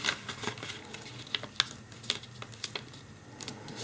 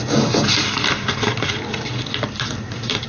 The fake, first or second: second